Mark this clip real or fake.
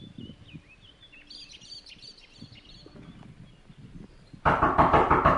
real